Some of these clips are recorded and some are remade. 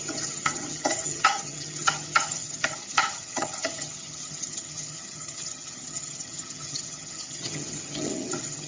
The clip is remade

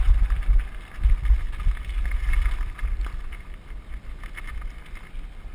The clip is recorded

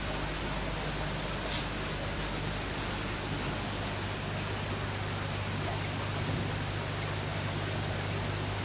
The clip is recorded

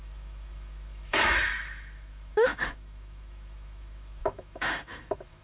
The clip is remade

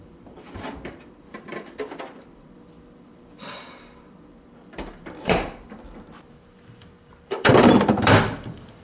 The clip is remade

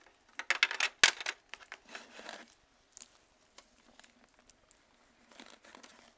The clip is recorded